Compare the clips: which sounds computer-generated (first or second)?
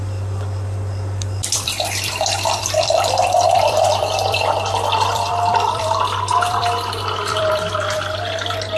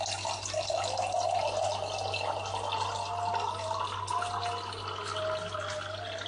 first